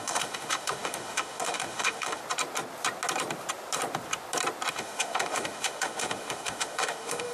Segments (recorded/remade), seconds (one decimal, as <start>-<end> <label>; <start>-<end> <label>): 0.0-2.2 remade; 2.2-4.7 recorded; 4.7-7.3 remade